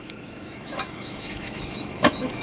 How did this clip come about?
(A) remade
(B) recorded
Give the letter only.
A